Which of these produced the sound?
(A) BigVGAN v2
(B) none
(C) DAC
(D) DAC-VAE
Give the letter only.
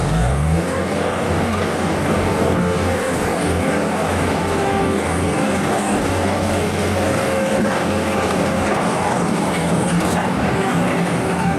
C